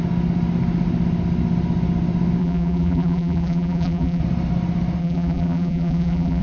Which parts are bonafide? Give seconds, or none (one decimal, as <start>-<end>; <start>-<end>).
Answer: 0.0-2.4; 4.2-5.0